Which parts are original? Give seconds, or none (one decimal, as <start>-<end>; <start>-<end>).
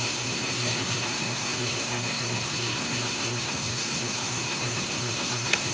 none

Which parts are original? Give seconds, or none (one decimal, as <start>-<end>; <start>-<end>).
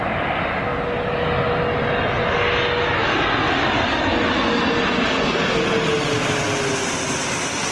0.0-6.8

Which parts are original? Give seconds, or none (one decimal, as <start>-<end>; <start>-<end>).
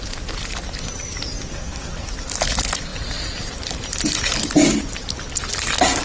0.0-1.5; 2.1-6.0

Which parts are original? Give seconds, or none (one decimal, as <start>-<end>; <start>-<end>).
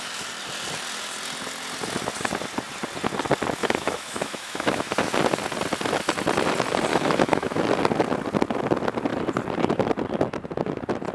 0.0-3.6; 5.1-6.9; 7.6-11.1